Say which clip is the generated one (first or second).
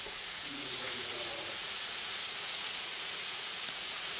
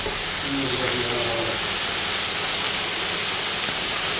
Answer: first